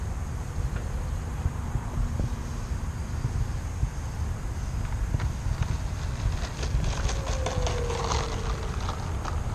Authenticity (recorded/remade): recorded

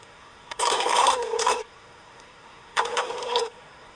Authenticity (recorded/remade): remade